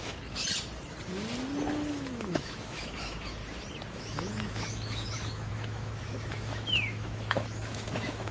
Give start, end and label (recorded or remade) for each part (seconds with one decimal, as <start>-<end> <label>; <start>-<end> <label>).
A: 0.0-0.4 remade; 0.4-1.9 recorded; 1.9-3.4 remade; 3.4-3.9 recorded; 3.9-8.3 remade